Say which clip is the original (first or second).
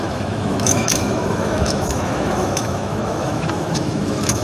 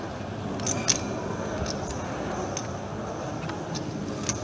second